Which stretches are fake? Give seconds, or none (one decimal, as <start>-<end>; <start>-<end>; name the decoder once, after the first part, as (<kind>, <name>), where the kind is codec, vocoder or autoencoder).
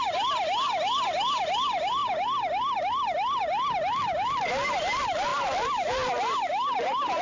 none